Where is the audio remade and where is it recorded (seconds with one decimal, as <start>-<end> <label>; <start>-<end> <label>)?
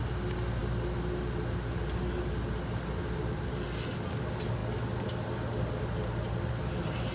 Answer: 0.0-7.1 recorded